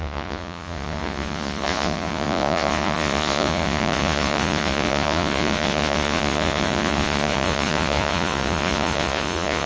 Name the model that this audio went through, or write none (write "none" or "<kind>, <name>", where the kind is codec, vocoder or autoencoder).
vocoder, Vocos